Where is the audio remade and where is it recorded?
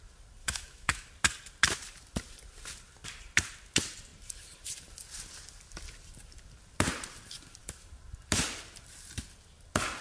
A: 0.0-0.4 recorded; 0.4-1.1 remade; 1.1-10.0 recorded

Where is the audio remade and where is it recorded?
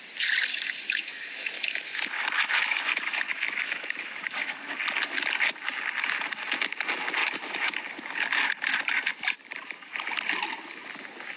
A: 0.0-0.5 recorded; 0.5-4.7 remade; 4.7-7.2 recorded; 7.2-7.8 remade; 7.8-11.4 recorded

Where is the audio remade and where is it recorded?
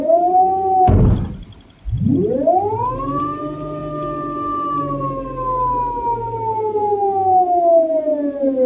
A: 0.0-6.8 recorded; 6.8-7.6 remade; 7.6-8.7 recorded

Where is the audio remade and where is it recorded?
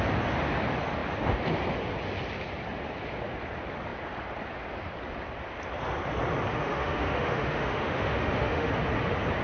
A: 0.0-6.5 recorded; 6.5-8.7 remade; 8.7-9.4 recorded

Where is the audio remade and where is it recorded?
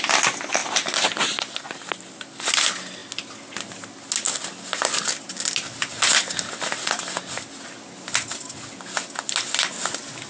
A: 0.0-10.3 recorded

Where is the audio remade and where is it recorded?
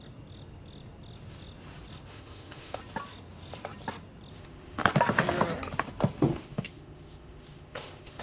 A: 0.0-2.1 recorded; 2.1-2.8 remade; 2.8-4.3 recorded; 4.3-4.9 remade; 4.9-6.3 recorded; 6.3-8.2 remade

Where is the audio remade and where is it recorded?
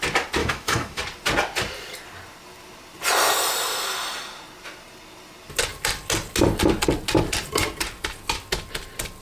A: 0.0-0.4 recorded; 0.4-1.0 remade; 1.0-9.2 recorded